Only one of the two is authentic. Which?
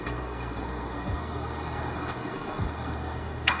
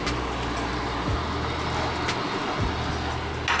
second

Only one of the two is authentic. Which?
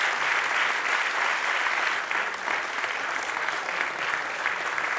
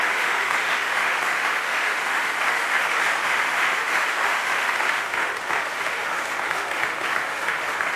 first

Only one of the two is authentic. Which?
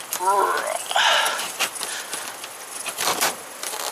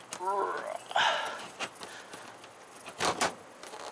second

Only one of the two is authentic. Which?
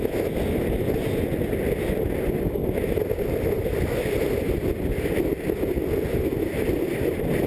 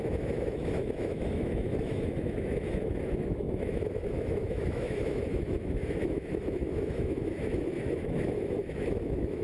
first